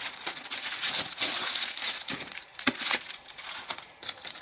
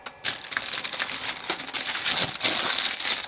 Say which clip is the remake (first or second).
first